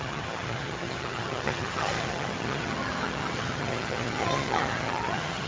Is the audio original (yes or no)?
no